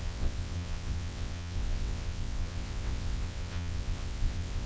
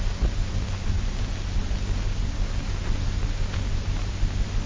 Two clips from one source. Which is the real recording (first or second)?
second